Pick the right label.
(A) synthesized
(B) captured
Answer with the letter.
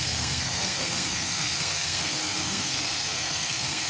A